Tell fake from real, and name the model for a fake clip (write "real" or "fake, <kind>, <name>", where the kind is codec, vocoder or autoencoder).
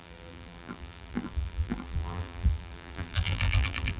fake, vocoder, BigVGAN v2